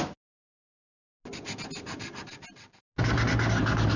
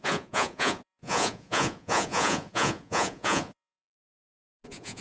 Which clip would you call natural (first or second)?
first